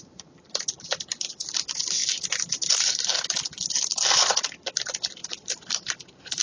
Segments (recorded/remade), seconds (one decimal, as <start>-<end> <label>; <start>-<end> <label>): 0.0-2.0 remade; 2.0-2.7 recorded; 2.7-6.4 remade